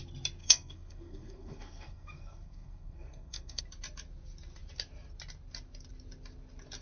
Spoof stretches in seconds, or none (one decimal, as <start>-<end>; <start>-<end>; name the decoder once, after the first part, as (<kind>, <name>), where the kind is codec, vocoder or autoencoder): 0.4-3.6 (codec, SNAC)